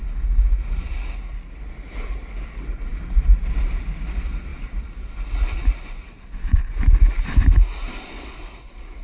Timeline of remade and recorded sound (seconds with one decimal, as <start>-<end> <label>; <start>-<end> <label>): 0.0-9.0 recorded